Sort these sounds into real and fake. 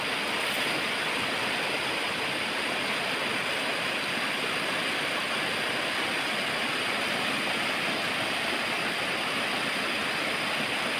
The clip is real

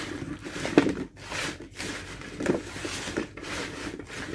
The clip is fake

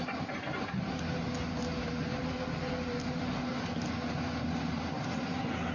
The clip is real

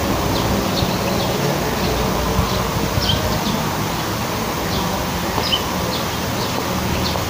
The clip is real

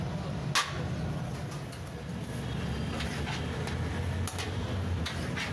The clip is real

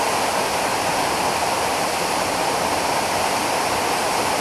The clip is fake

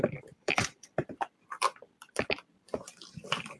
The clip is fake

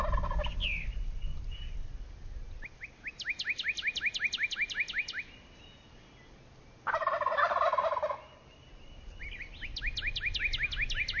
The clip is real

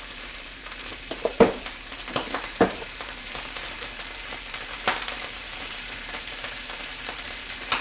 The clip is fake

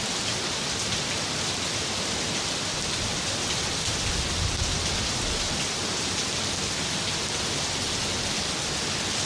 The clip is real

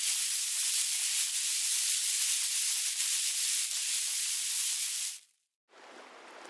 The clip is real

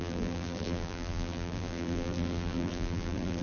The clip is fake